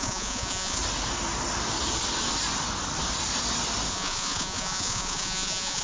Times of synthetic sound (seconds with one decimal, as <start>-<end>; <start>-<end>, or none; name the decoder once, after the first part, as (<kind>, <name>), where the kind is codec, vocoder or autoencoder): 0.0-0.8 (vocoder, Vocos); 3.9-5.8

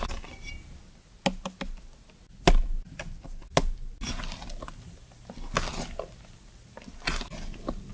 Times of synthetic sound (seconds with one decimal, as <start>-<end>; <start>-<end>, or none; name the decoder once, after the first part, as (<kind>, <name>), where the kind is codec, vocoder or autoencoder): none

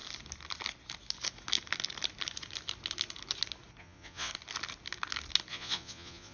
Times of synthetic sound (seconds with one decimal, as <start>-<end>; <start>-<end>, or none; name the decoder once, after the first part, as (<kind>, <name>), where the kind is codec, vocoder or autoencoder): 3.8-4.3 (vocoder, Vocos); 5.5-6.3

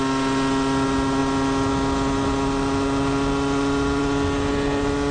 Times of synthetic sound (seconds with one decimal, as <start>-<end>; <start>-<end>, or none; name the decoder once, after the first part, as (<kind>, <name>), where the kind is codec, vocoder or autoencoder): none

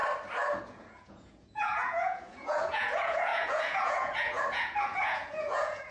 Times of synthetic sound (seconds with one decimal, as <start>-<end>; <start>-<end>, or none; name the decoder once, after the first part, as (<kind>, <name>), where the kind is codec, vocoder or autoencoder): 0.6-5.9 (vocoder, Vocos)

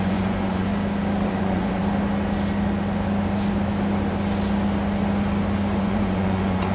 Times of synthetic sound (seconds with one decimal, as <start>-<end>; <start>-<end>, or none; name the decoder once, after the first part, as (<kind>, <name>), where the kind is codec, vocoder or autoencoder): 0.0-0.7 (vocoder, Vocos); 1.3-1.8; 5.8-6.7